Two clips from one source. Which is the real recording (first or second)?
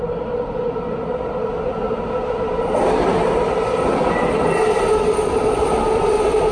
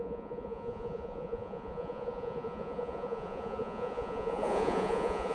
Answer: first